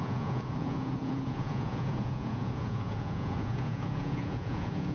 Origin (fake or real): fake